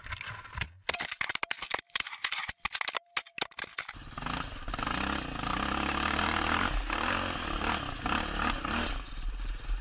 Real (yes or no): yes